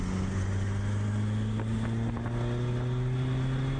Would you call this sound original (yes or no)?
yes